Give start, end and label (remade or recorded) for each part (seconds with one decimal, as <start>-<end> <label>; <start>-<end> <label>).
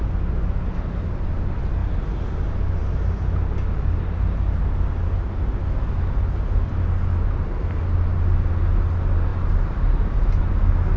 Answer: 0.0-11.0 recorded